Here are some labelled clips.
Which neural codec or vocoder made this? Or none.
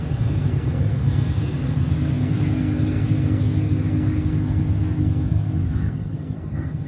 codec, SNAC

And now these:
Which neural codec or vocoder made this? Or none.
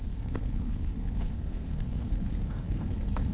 codec, SNAC